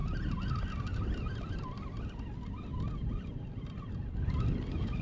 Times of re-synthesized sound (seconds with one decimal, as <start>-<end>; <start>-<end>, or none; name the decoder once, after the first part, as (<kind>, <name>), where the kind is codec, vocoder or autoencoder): none